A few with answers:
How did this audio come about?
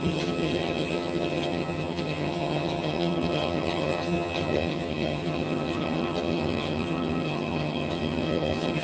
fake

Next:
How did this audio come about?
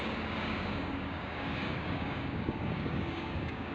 fake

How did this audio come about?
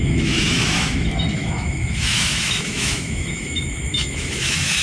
fake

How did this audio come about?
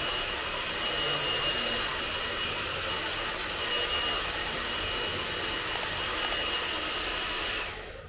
real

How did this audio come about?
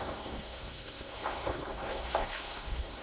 fake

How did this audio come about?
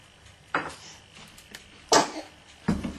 real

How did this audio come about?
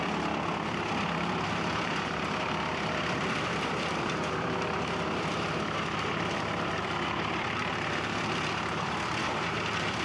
fake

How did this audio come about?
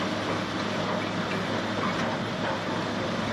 real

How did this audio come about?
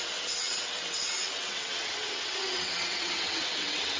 fake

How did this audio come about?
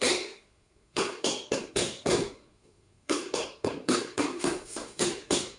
fake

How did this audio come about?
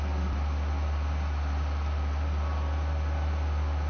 real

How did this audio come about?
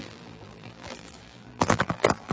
fake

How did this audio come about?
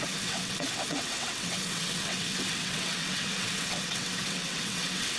fake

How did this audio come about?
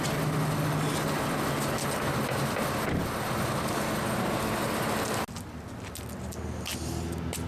real